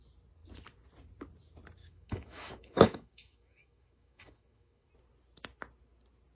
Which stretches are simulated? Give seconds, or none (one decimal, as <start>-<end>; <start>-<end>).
1.8-4.9